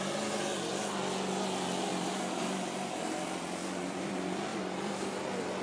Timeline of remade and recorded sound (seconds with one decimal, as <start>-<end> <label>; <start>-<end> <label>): 0.0-1.9 recorded; 1.9-3.0 remade; 3.0-3.6 recorded; 3.6-4.1 remade; 4.1-4.5 recorded; 4.5-5.1 remade; 5.1-5.6 recorded